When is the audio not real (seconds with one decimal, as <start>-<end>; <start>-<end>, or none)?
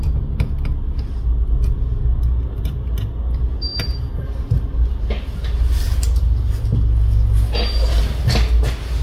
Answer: none